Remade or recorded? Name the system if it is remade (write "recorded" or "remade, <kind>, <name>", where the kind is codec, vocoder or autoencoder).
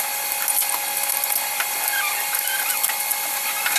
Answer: recorded